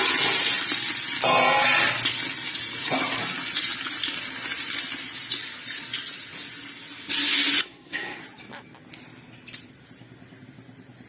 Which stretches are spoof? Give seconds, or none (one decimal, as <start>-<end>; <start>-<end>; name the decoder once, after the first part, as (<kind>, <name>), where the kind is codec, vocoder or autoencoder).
7.6-8.2 (codec, SNAC)

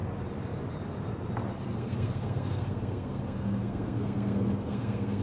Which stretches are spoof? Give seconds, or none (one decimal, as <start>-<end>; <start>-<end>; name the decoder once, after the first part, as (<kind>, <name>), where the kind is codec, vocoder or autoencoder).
1.8-5.2 (codec, SNAC)

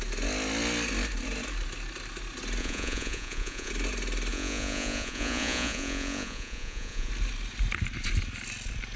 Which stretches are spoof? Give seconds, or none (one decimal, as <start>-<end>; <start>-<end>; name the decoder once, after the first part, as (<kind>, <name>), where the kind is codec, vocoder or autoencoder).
2.6-3.7 (vocoder, Vocos); 4.3-7.1

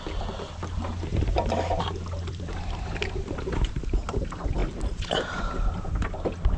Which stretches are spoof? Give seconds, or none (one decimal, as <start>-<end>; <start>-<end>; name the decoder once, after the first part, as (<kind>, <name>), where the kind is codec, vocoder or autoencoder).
1.1-3.7 (vocoder, BigVGAN v2); 4.6-5.1